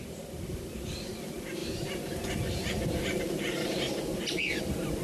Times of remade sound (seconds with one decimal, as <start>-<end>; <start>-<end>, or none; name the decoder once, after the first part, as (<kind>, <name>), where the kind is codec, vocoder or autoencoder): 1.6-4.6 (vocoder, BigVGAN v2)